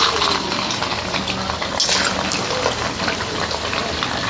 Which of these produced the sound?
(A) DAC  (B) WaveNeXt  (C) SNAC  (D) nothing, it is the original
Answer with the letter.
D